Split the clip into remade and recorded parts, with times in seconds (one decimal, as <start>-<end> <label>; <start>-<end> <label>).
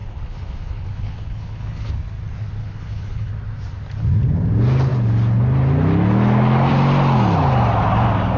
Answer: 0.0-1.9 remade; 1.9-2.6 recorded; 2.6-3.3 remade; 3.3-8.4 recorded